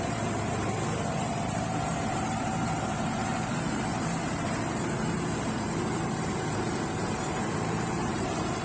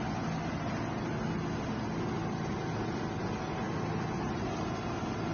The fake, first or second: first